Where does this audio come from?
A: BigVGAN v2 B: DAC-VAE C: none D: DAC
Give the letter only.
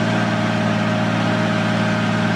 C